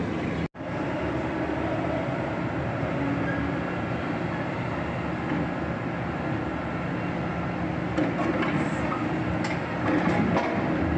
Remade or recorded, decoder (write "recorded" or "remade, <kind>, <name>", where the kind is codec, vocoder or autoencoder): recorded